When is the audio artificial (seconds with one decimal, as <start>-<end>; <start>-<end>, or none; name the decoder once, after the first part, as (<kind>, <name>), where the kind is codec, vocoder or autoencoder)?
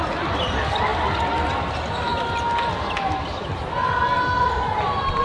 none